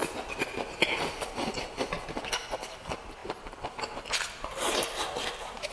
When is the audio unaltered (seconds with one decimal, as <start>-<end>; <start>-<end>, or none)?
0.0-5.7